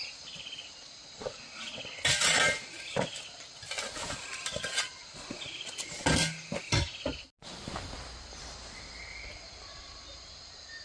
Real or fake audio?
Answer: real